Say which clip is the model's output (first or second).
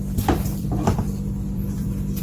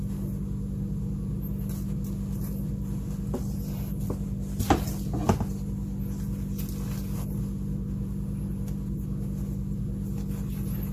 first